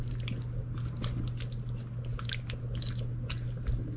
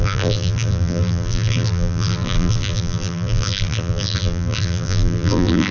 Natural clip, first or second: first